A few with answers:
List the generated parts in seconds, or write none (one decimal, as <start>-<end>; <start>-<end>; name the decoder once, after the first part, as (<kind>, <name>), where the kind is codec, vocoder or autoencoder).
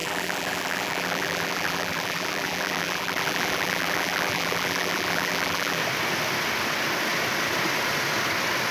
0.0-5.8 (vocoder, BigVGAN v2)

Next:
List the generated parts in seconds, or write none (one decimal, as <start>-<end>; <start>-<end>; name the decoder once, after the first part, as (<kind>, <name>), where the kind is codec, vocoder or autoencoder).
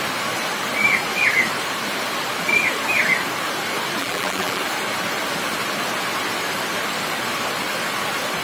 4.0-4.6 (vocoder, BigVGAN v2)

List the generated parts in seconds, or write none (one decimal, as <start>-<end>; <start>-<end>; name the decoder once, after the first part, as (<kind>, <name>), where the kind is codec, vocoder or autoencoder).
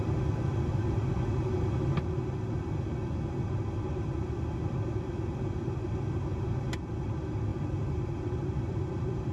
7.5-9.3 (vocoder, BigVGAN v2)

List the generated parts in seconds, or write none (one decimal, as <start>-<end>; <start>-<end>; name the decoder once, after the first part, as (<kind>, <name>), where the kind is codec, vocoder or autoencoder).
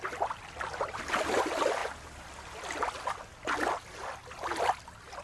none